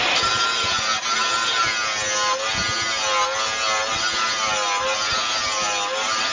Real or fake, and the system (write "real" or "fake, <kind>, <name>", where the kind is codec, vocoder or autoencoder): real